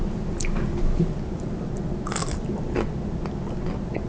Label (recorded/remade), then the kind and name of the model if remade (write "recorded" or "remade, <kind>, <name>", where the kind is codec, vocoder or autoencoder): recorded